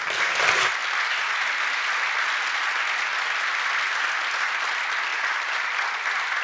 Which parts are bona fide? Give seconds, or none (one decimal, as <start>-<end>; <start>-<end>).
0.0-5.1; 5.7-6.4

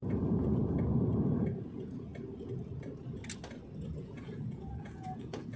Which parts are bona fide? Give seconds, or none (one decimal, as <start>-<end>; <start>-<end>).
0.6-1.6; 2.1-4.0

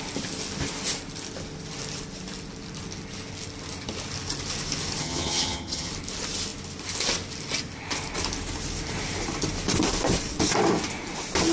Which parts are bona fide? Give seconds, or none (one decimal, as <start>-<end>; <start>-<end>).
0.0-5.0; 5.9-11.5

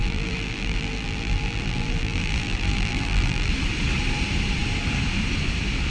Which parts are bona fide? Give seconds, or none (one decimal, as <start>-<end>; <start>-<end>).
3.5-5.9

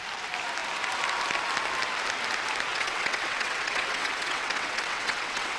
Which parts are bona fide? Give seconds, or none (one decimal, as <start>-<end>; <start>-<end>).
0.0-2.7

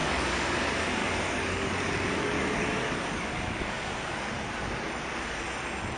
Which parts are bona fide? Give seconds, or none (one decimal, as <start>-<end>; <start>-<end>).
0.6-1.0; 4.3-6.0